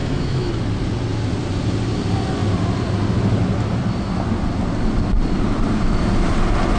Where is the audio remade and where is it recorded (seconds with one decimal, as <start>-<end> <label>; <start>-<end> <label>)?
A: 0.0-0.5 remade; 0.5-6.8 recorded